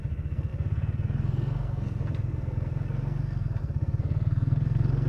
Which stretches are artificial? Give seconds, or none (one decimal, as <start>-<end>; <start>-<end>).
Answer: 0.0-5.1

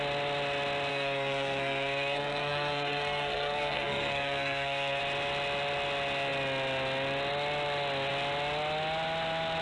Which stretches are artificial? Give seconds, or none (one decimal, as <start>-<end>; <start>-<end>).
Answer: 0.9-5.0

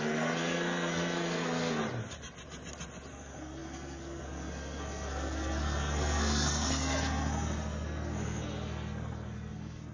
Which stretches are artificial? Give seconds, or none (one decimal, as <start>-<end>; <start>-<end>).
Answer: 0.0-1.8; 3.1-9.9

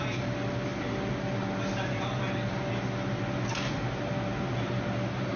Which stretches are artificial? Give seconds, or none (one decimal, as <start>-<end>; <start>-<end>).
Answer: none

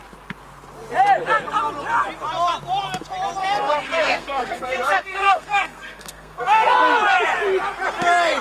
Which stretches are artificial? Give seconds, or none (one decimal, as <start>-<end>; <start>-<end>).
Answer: 3.4-6.7

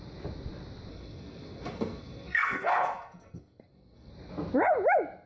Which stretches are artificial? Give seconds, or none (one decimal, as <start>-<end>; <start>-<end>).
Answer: 0.9-4.1